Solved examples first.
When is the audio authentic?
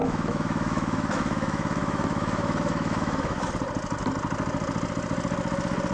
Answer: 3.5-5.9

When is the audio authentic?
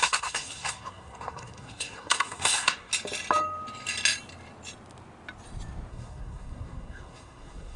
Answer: 2.9-5.9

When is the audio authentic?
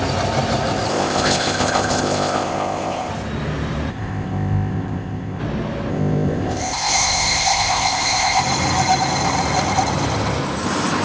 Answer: 0.0-0.9; 3.1-3.9; 5.4-5.9; 8.4-11.0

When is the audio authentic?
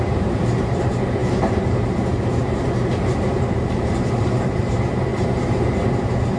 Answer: none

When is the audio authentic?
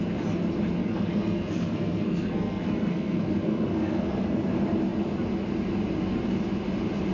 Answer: 0.0-0.8; 4.5-7.1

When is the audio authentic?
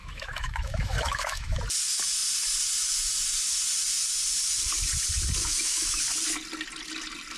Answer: 1.6-5.4; 6.0-7.4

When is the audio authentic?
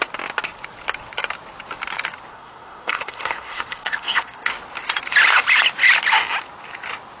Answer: 0.0-2.3; 4.5-7.2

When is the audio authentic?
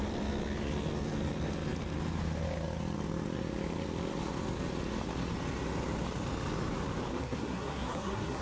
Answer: 0.0-7.1